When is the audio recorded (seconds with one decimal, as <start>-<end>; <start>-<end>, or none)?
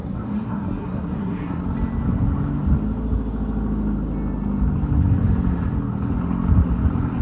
1.6-7.2